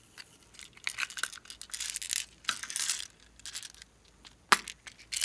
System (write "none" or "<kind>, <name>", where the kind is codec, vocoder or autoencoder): none